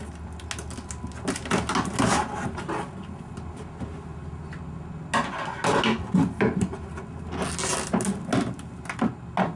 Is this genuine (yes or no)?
yes